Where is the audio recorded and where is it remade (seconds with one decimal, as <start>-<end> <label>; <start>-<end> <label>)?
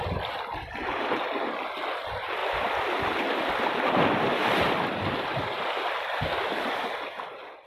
0.0-2.4 recorded; 2.4-6.7 remade; 6.7-7.7 recorded